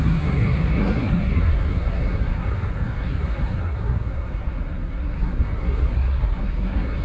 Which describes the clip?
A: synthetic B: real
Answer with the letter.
A